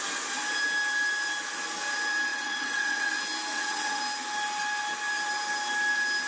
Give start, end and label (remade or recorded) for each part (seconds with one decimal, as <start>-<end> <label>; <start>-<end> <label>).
0.0-2.3 recorded; 2.3-3.1 remade; 3.1-3.5 recorded; 3.5-4.0 remade; 4.0-6.3 recorded

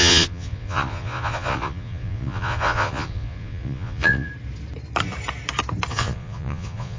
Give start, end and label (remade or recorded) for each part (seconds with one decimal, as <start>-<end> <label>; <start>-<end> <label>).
0.0-4.3 remade; 4.3-5.9 recorded; 5.9-7.0 remade

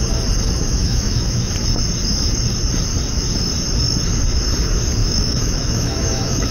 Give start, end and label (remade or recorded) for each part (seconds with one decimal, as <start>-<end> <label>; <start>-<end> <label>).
0.0-0.8 recorded; 0.8-1.5 remade; 1.5-5.0 recorded; 5.0-6.5 remade